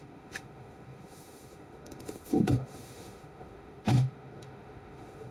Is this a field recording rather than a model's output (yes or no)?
no